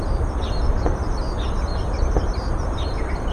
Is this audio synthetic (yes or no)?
yes